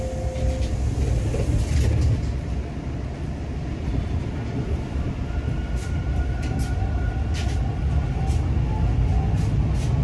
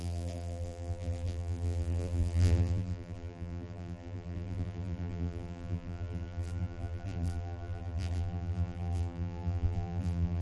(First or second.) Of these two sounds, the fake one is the second